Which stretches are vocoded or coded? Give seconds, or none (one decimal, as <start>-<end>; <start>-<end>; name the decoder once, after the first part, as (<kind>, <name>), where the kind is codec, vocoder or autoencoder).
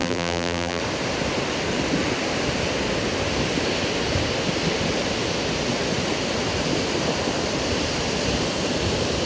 0.0-0.8 (vocoder, BigVGAN v2)